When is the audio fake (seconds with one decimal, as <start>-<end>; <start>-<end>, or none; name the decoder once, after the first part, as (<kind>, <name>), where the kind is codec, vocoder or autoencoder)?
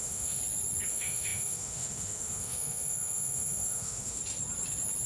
0.0-0.4 (autoencoder, DAC-VAE); 0.9-4.2